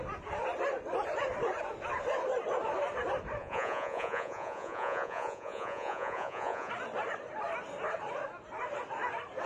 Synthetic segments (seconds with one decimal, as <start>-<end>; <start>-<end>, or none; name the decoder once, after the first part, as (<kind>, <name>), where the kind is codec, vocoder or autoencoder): 3.4-6.7 (vocoder, Vocos)

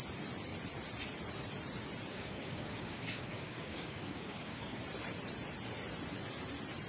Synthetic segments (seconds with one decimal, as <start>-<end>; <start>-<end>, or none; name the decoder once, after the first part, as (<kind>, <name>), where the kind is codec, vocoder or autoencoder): 2.1-4.8 (codec, DAC)

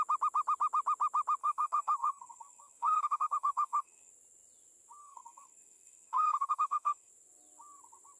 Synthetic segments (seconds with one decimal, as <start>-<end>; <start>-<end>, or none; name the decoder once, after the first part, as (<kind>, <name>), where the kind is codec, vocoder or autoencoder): 1.4-4.1 (codec, SNAC); 5.0-7.1

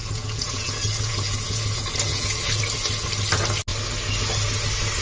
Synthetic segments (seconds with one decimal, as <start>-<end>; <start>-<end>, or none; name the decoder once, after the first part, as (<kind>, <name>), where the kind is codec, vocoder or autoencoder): 0.0-2.6 (vocoder, Vocos)

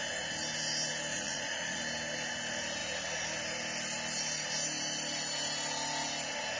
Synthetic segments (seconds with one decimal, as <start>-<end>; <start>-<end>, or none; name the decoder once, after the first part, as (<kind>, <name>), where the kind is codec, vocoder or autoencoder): 1.1-1.8 (vocoder, Vocos)

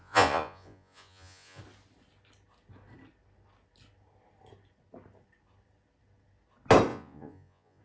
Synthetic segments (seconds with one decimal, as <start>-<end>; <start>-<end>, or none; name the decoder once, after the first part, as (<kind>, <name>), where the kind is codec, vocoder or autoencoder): 0.0-1.6 (vocoder, Vocos); 6.9-7.8

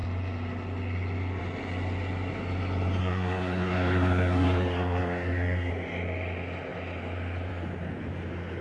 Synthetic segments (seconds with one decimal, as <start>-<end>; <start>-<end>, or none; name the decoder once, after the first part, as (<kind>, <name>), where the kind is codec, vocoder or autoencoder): 3.0-5.7 (codec, SNAC)